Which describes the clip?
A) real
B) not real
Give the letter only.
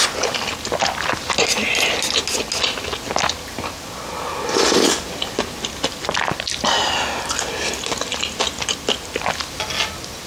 A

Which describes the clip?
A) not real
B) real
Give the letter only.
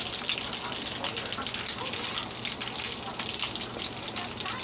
B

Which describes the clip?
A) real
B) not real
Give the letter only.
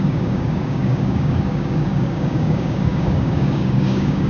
B